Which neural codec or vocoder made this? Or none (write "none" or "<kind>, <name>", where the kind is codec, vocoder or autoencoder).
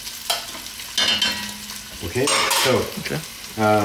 none